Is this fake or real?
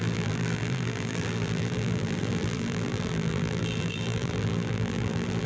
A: fake